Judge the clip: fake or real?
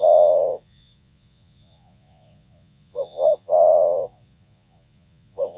fake